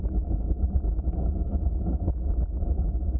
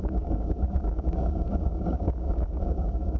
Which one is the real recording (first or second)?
first